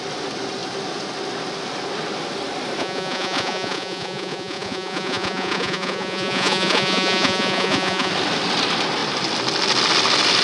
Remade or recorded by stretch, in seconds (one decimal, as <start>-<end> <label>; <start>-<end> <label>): 0.0-2.8 recorded; 2.8-8.1 remade; 8.1-10.4 recorded